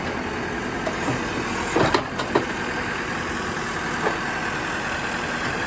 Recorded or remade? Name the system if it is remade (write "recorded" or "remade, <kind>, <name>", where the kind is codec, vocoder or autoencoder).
recorded